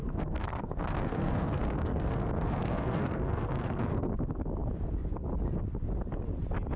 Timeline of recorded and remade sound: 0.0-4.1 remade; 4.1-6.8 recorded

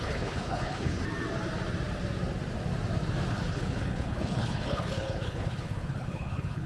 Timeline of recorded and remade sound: 0.0-1.0 remade; 1.0-3.3 recorded; 3.3-6.7 remade

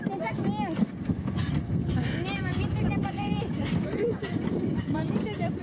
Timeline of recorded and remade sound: 0.0-2.5 recorded; 2.5-5.6 remade

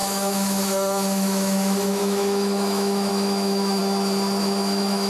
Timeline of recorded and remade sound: 0.0-3.8 remade; 3.8-4.4 recorded; 4.4-5.1 remade

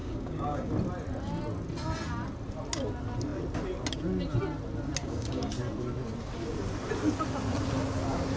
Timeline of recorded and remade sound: 0.0-0.7 remade; 0.7-5.0 recorded; 5.0-5.5 remade; 5.5-8.4 recorded